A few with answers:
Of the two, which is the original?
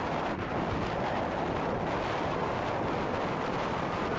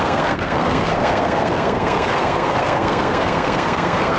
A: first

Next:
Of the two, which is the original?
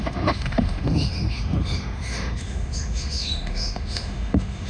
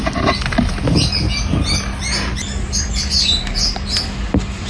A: second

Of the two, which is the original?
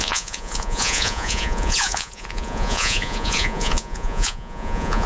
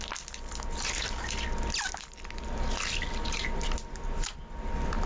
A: second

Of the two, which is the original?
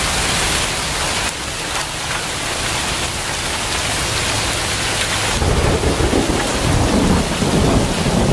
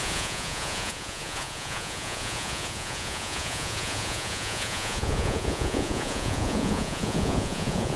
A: first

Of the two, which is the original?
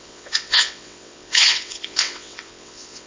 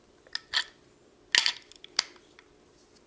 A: second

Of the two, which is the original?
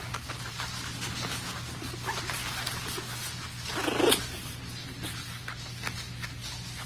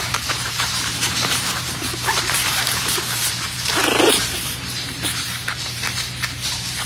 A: first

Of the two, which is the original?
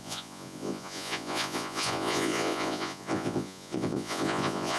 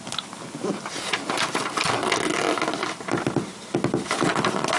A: second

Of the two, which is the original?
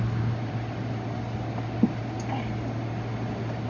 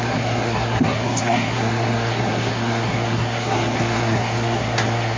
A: first